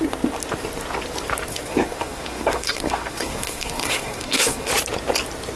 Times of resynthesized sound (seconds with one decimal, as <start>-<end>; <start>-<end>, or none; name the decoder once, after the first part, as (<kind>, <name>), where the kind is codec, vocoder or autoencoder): 1.5-4.7 (codec, SNAC)